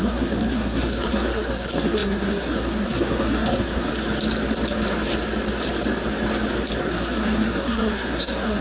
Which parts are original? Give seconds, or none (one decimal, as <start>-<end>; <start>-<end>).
3.9-6.8